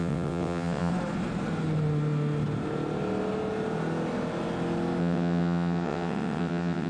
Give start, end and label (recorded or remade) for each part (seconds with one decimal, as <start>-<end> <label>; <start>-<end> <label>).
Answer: 0.0-0.9 remade; 0.9-5.0 recorded; 5.0-6.9 remade